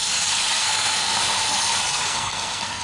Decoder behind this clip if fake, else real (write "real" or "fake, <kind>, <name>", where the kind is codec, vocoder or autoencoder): fake, codec, SNAC